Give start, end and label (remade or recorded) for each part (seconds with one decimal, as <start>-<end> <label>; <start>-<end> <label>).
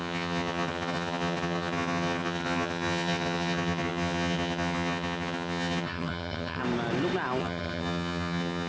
0.0-6.6 remade; 6.6-7.4 recorded; 7.4-8.7 remade